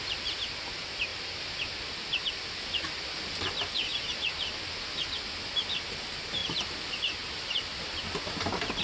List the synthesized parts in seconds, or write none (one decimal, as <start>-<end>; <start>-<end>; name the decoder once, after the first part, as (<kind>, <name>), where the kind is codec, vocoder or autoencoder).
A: 1.1-2.3 (vocoder, BigVGAN v2); 6.4-8.0